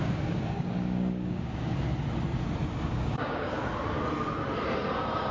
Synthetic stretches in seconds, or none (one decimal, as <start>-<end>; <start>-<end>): 0.0-1.9; 2.8-3.6

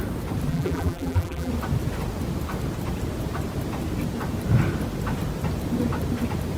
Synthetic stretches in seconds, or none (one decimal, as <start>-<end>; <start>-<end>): 0.5-1.5

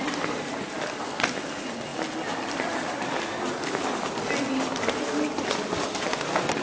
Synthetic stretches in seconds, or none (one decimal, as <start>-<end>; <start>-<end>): none

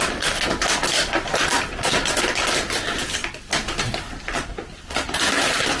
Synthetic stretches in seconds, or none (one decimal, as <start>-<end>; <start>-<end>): 1.5-2.0; 3.2-4.5

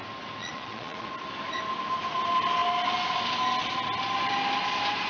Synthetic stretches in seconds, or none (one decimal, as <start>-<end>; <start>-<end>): 0.4-1.1

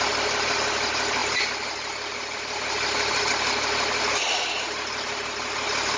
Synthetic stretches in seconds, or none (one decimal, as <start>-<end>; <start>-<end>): none